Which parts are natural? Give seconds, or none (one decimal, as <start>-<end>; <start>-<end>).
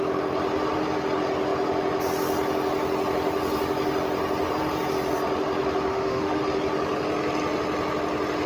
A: 0.0-5.9; 6.4-8.5